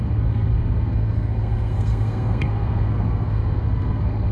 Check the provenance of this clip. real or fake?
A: fake